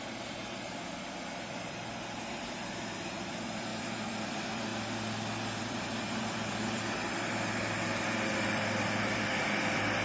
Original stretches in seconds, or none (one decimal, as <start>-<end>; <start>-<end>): 4.7-5.6; 7.0-8.3